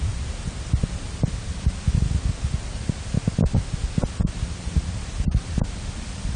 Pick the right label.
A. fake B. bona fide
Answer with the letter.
B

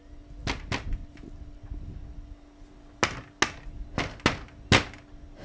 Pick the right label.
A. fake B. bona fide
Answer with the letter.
B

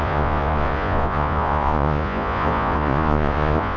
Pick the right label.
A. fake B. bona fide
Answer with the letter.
A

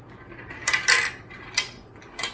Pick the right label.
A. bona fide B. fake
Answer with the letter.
A